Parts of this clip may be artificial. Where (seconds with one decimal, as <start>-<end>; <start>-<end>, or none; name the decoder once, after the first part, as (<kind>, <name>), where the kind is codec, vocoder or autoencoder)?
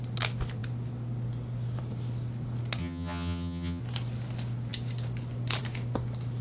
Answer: 2.8-3.8 (vocoder, HiFi-GAN)